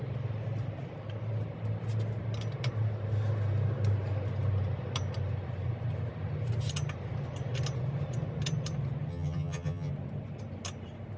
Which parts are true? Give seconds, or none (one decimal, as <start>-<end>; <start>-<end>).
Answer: 0.0-9.1; 9.9-11.2